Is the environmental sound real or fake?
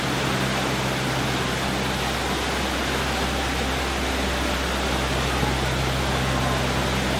real